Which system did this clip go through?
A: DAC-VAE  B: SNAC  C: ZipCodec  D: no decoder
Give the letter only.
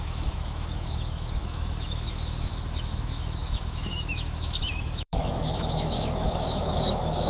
A